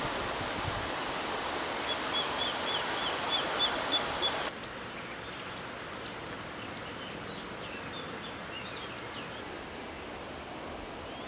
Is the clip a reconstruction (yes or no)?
no